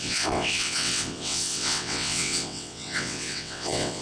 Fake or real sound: fake